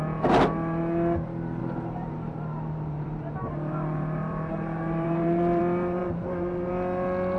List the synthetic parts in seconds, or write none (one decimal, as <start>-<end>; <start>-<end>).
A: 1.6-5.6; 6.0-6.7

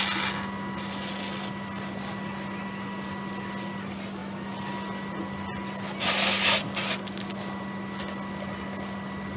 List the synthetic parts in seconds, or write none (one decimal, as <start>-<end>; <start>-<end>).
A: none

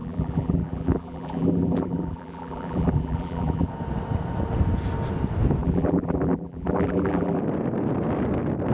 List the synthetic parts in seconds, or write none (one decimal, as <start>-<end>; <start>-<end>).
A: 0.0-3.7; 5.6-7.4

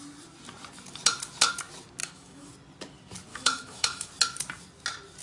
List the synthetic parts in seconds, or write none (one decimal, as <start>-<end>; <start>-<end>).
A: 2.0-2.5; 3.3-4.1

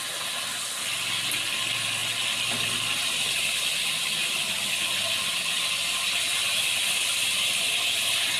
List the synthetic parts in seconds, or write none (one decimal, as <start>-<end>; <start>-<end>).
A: none

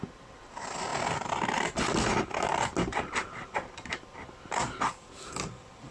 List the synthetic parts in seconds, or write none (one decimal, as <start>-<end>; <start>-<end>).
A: none